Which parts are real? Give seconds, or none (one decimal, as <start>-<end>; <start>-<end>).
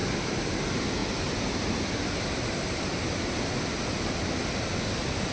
0.0-5.3